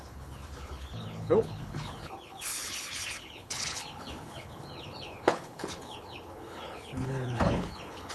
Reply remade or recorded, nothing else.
remade